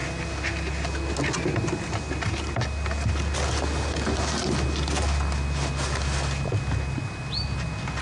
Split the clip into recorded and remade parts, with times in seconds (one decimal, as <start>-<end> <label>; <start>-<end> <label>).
0.0-8.0 recorded